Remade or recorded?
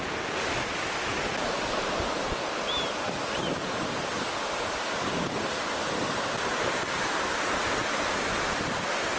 recorded